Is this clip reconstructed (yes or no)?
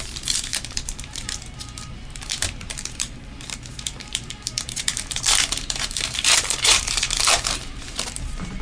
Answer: yes